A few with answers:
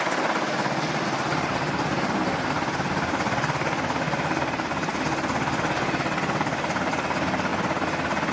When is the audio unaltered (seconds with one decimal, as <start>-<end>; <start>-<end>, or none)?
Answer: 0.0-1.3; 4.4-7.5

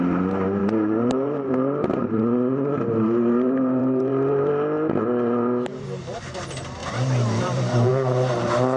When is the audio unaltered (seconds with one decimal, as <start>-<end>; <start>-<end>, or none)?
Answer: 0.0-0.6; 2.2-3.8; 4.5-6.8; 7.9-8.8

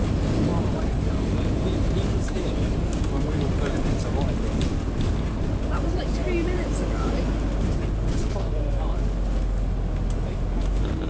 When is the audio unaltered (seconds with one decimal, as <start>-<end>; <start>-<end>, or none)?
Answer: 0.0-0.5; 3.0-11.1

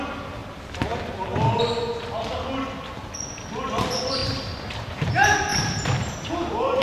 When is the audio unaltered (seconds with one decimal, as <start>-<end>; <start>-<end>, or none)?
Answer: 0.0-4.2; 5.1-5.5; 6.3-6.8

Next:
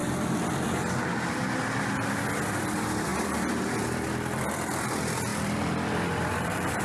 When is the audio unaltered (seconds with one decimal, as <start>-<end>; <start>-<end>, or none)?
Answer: 0.0-2.5

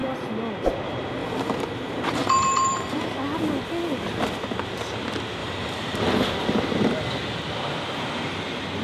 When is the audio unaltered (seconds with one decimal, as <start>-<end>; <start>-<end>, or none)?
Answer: 0.0-1.2; 3.0-5.4; 6.0-8.8

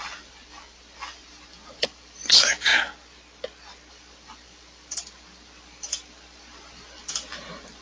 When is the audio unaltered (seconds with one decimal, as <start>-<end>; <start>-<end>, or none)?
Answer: 2.7-3.9

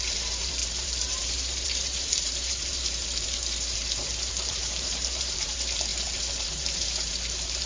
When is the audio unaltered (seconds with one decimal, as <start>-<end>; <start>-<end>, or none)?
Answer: none